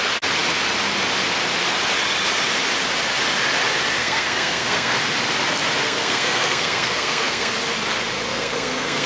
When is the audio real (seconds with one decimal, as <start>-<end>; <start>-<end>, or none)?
0.0-4.0; 5.0-5.8; 7.5-8.3